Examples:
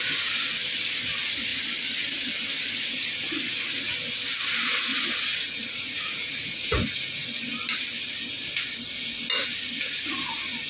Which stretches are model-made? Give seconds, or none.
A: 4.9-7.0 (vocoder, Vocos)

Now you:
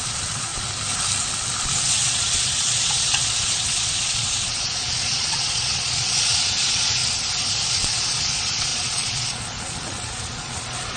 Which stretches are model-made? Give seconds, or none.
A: 0.0-0.5 (vocoder, Vocos); 1.7-7.0; 7.7-11.0

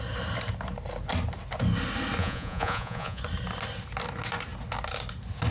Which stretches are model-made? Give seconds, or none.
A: 2.2-3.2 (vocoder, Vocos)